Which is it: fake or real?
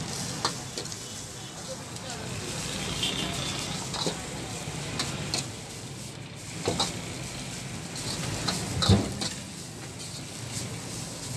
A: real